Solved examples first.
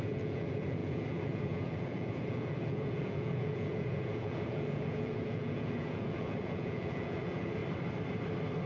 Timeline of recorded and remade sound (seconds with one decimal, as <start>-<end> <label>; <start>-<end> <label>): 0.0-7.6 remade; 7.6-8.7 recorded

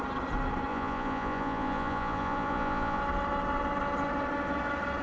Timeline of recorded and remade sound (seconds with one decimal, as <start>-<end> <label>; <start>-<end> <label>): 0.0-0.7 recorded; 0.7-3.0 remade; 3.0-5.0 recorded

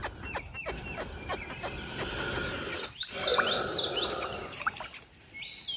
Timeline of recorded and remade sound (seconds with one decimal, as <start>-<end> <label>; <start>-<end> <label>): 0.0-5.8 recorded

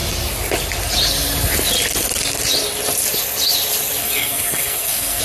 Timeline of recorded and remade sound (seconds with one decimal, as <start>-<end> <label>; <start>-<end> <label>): 0.0-4.0 recorded; 4.0-5.2 remade

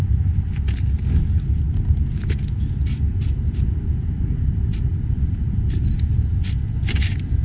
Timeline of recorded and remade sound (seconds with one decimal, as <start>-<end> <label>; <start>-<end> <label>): 0.0-7.4 recorded

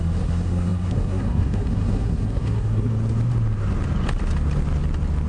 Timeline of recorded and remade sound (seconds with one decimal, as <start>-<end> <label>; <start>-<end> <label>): 0.0-2.9 remade; 2.9-5.3 recorded

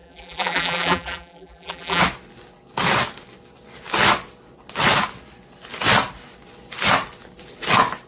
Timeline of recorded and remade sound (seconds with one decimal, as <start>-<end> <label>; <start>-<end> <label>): 0.0-2.0 remade; 2.0-8.1 recorded

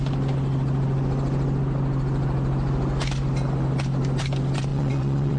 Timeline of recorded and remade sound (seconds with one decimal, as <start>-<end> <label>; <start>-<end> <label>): 0.0-4.7 recorded; 4.7-5.4 remade